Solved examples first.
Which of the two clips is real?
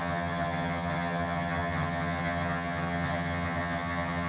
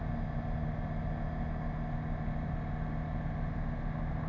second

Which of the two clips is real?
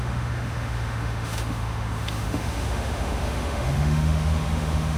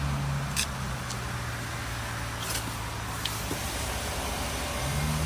second